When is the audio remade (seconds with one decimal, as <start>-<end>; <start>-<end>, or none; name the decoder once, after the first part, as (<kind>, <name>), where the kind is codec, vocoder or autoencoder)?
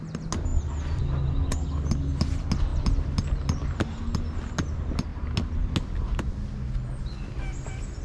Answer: none